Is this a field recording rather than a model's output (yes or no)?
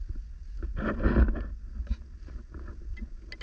yes